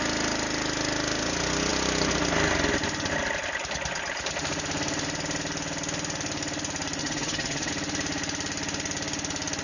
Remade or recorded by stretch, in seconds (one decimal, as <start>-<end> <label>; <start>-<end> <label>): 0.0-7.0 recorded; 7.0-7.7 remade; 7.7-9.6 recorded